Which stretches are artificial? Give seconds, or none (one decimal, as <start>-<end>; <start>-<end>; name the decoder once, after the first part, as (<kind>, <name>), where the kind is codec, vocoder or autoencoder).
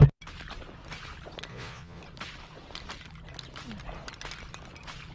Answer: 1.5-2.0 (vocoder, Vocos)